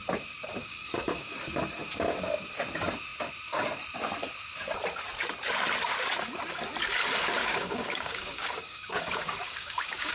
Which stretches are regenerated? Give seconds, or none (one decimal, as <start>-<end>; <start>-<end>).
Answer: 0.6-1.4; 7.4-10.1